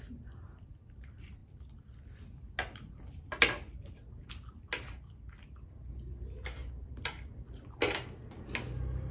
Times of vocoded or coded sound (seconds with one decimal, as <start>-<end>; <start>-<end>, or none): none